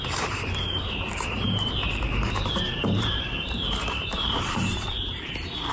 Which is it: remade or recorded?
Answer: remade